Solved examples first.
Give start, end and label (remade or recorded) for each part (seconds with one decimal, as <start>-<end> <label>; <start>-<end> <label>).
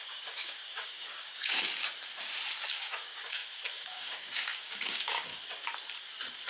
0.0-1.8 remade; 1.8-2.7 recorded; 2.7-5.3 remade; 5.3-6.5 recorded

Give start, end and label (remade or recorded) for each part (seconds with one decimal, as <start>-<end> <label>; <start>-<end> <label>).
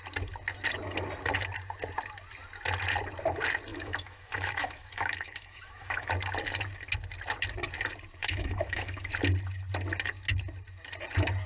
0.0-3.7 recorded; 3.7-6.1 remade; 6.1-8.2 recorded; 8.2-9.1 remade; 9.1-11.5 recorded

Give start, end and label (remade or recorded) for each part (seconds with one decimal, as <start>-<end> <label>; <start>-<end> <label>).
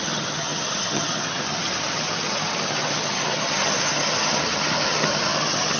0.0-5.8 remade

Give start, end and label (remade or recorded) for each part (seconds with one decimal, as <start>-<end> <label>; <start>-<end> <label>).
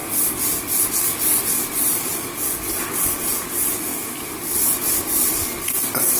0.0-6.2 recorded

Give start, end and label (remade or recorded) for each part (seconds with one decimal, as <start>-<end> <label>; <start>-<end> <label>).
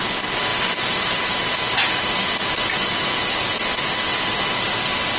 0.0-0.5 recorded; 0.5-1.3 remade; 1.3-5.2 recorded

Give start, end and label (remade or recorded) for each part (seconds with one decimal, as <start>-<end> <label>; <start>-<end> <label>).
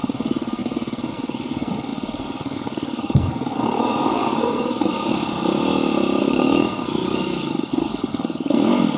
0.0-5.1 remade; 5.1-6.2 recorded; 6.2-9.0 remade